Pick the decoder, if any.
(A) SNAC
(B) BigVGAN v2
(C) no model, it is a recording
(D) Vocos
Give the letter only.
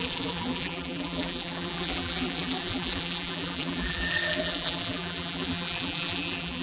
B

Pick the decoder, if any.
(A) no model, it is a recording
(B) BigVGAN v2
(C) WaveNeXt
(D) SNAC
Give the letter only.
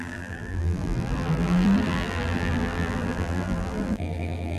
B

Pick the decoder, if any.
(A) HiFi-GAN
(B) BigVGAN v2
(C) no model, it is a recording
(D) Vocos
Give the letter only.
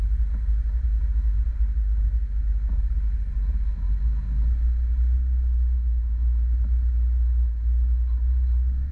C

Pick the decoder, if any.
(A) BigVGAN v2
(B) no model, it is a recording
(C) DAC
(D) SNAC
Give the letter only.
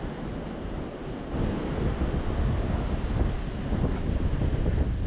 B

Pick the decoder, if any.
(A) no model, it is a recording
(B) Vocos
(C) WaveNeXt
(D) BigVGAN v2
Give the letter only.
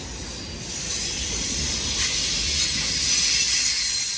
A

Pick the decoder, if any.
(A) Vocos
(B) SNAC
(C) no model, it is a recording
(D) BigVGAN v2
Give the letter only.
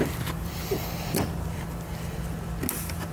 C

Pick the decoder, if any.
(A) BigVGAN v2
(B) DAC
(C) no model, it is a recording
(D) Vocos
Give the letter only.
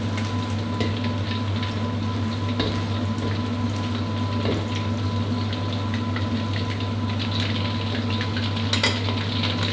C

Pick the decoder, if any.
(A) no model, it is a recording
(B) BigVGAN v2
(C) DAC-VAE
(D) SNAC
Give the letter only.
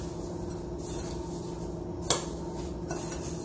A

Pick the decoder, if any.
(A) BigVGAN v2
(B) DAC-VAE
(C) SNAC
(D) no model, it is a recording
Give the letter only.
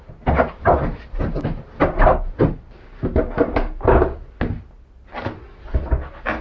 D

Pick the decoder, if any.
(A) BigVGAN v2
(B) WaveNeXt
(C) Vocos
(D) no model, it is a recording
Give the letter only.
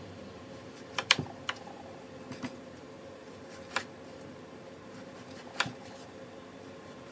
A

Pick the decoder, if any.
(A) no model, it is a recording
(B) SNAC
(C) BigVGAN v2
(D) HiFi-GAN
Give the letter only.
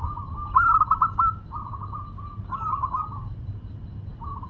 A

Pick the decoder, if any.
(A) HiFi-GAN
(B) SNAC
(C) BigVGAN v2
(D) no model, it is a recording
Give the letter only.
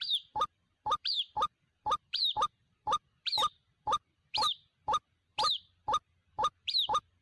C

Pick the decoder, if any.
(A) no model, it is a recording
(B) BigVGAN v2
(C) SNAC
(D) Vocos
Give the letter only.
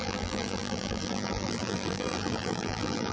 B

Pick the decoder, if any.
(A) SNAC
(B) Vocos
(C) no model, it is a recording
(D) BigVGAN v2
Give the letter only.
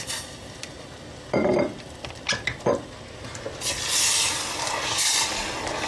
C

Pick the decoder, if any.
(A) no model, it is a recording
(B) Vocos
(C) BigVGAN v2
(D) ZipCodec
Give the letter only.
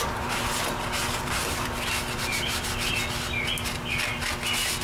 A